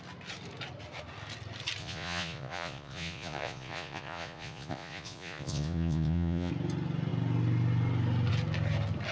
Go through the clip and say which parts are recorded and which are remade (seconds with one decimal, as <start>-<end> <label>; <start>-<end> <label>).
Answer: 0.0-1.8 recorded; 1.8-6.5 remade; 6.5-9.1 recorded